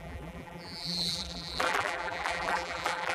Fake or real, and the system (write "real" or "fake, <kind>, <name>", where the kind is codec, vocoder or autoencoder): fake, vocoder, BigVGAN v2